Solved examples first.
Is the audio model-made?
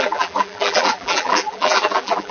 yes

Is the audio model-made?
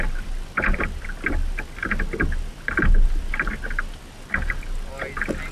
no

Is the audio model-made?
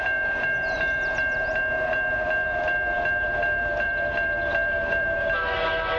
yes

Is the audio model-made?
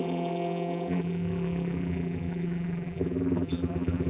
yes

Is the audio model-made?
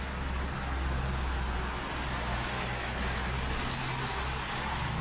no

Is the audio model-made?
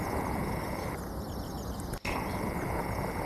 yes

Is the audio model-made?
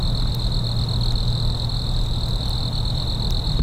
no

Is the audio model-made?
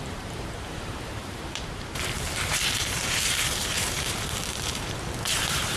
yes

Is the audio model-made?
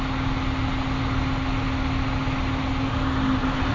no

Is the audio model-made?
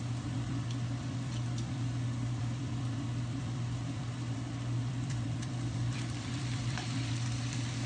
yes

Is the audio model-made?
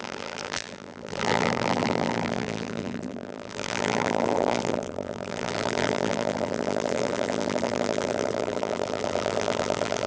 yes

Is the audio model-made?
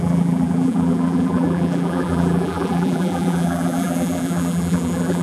yes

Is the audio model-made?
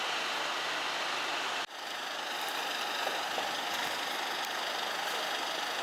no